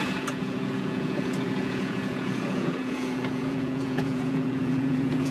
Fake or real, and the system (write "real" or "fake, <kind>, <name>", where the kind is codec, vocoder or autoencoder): fake, vocoder, Vocos